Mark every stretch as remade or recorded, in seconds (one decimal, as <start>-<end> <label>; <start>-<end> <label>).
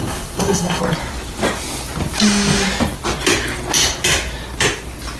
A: 0.0-0.8 remade; 0.8-5.2 recorded